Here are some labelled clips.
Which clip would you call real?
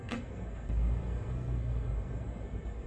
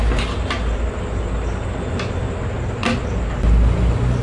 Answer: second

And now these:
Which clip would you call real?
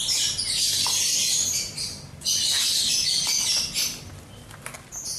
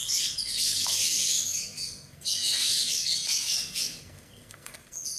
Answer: first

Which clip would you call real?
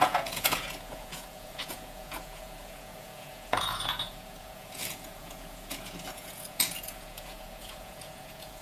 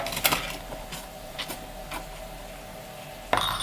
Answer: second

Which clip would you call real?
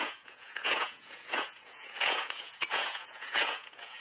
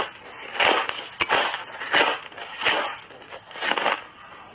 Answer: second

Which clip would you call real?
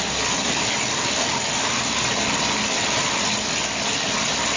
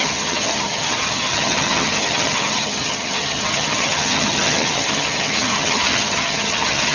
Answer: first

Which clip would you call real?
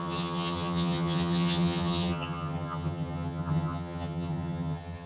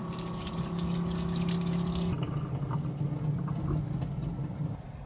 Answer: second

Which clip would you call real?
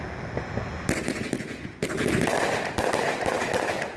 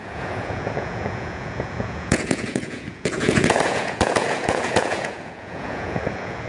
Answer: first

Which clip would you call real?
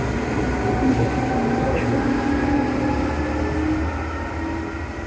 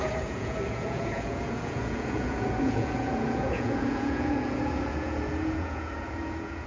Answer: first